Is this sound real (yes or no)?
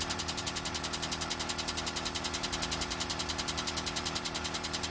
yes